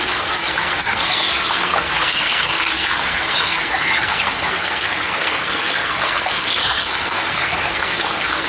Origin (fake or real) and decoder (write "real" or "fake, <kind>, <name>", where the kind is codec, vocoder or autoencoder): fake, codec, SNAC